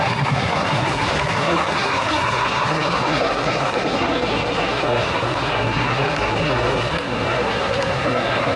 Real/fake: fake